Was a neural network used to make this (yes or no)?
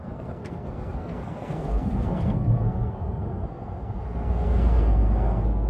yes